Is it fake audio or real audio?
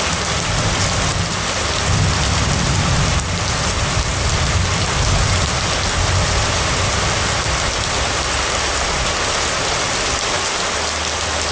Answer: real